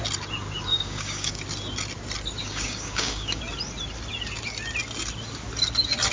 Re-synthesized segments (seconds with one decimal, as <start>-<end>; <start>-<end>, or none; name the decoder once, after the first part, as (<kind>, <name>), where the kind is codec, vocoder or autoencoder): 0.7-1.4 (codec, DAC); 2.4-3.4